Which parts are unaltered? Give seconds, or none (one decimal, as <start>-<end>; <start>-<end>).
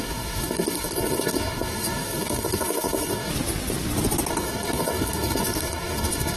3.3-4.3